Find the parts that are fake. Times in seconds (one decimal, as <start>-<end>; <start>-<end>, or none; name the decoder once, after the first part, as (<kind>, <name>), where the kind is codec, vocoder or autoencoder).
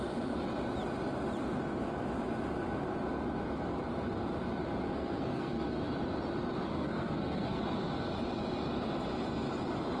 4.9-5.8 (codec, SNAC); 6.7-7.6